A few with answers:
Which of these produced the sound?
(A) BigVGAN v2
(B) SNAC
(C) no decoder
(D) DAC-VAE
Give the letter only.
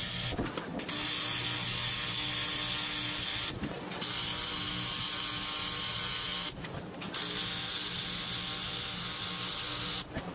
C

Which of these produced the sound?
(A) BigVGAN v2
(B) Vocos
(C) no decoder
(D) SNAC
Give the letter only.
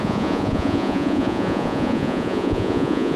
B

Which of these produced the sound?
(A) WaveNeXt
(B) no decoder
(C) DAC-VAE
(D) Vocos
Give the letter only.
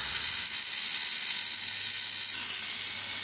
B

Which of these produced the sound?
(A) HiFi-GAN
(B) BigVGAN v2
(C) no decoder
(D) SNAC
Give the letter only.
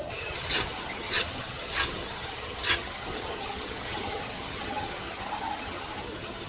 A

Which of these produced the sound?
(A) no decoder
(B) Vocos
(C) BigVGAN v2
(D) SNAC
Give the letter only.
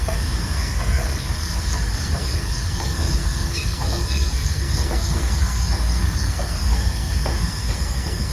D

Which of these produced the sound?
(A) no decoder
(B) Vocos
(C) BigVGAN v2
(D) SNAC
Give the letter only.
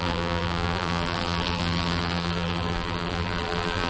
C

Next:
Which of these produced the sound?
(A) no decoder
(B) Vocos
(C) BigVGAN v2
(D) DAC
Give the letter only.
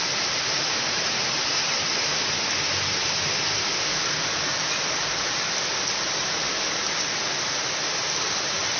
A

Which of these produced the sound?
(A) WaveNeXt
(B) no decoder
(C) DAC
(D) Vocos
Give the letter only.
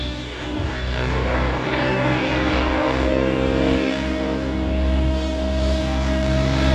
C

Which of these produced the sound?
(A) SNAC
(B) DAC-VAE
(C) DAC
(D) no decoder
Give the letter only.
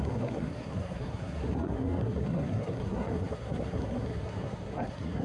A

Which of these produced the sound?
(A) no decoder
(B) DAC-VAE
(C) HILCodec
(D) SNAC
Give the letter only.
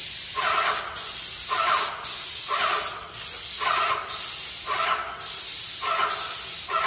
A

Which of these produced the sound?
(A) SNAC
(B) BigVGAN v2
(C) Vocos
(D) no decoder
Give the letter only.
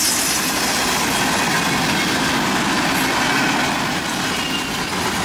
D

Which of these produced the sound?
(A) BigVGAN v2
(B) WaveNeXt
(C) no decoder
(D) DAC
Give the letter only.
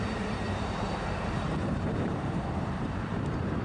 A